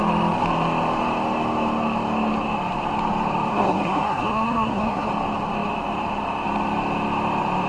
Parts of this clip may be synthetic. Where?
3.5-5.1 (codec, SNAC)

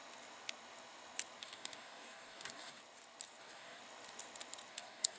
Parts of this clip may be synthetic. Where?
1.4-2.8 (codec, DAC); 3.4-3.8; 4.7-5.2

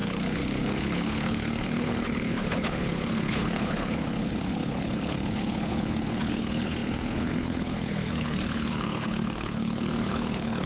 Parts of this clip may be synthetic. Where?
0.0-10.7 (codec, HILCodec)

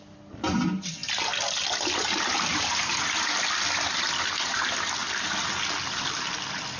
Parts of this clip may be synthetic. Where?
none

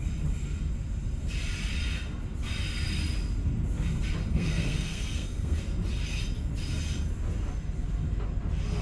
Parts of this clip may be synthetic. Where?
4.3-5.6 (codec, SNAC)

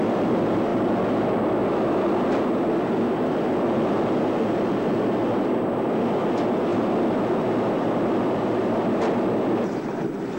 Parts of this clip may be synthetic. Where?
none